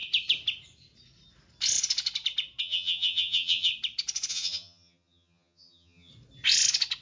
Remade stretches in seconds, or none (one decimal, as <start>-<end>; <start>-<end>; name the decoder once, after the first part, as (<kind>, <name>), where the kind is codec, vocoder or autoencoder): 2.6-3.7 (vocoder, HiFi-GAN); 4.3-6.1